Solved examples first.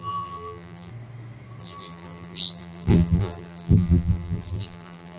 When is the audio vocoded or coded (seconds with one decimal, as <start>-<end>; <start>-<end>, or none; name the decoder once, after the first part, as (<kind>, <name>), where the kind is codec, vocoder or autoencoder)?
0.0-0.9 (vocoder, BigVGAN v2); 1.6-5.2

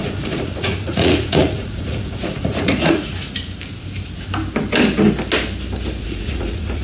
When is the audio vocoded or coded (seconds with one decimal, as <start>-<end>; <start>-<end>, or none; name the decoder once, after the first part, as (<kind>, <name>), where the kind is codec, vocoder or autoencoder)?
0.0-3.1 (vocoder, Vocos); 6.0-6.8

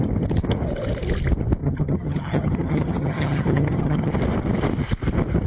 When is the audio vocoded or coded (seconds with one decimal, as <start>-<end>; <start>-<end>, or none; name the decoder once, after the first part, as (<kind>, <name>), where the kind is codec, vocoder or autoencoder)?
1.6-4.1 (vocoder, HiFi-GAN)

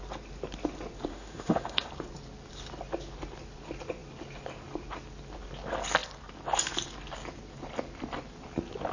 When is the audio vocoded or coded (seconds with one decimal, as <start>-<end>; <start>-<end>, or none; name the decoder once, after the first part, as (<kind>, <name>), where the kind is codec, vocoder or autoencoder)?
1.1-1.9 (autoencoder, DAC-VAE)

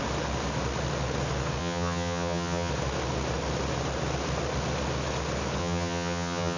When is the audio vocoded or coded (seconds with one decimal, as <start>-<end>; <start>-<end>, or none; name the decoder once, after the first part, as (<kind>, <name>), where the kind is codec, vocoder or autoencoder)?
1.6-2.7 (vocoder, HiFi-GAN); 5.6-6.6

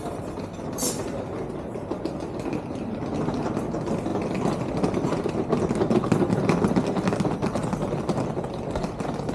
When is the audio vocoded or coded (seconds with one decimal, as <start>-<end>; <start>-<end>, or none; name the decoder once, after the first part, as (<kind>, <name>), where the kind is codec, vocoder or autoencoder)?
none

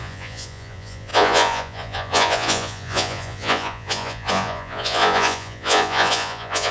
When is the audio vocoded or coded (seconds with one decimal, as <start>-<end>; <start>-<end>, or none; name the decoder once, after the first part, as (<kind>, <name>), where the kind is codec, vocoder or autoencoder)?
0.0-6.7 (vocoder, Vocos)